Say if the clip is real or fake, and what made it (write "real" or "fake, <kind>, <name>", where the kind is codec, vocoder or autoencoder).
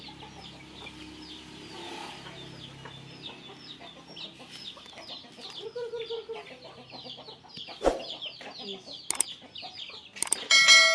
real